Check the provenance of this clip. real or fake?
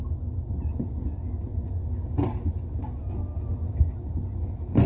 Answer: real